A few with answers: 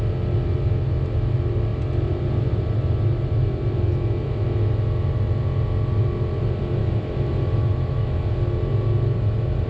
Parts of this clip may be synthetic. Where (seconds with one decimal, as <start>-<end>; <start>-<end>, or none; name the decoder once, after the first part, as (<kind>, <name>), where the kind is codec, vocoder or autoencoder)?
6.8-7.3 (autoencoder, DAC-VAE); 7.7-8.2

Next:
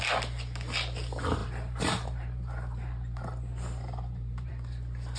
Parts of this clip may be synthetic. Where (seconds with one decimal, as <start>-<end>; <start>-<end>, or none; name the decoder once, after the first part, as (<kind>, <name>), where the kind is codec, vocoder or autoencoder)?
1.4-4.5 (vocoder, BigVGAN v2)

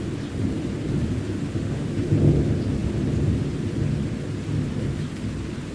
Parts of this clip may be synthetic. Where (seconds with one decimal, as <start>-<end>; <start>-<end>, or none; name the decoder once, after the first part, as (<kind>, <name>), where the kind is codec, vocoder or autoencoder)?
1.5-2.0 (autoencoder, DAC-VAE)

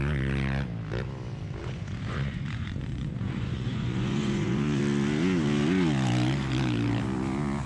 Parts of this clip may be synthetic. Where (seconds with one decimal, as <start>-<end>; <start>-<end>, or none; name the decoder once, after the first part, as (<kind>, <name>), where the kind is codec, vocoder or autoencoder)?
1.6-4.8 (vocoder, Vocos)

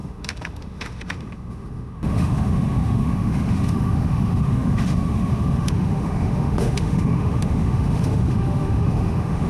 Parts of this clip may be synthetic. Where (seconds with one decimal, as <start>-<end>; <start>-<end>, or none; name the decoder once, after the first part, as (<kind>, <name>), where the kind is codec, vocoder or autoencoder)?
0.0-9.5 (autoencoder, DAC-VAE)